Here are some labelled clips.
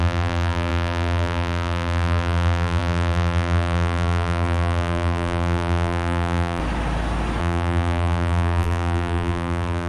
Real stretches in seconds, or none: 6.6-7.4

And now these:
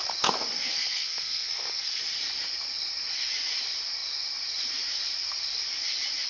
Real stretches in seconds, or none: 0.0-0.7; 2.0-6.3

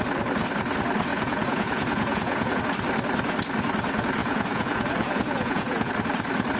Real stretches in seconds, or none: 0.0-1.1; 2.6-4.2; 5.9-6.6

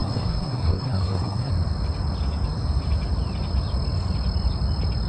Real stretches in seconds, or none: 1.5-5.1